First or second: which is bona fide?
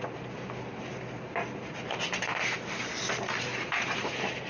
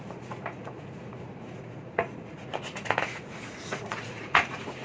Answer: first